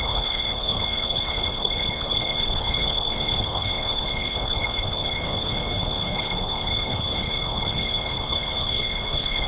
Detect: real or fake fake